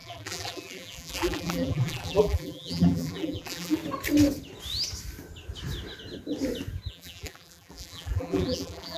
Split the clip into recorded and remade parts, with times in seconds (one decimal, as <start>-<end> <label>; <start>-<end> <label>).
0.0-3.8 remade; 3.8-6.9 recorded; 6.9-9.0 remade